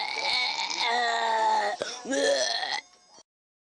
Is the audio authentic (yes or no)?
yes